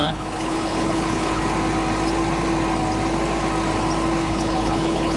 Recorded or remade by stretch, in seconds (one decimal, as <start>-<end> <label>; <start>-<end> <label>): 0.0-1.4 remade; 1.4-4.2 recorded; 4.2-5.2 remade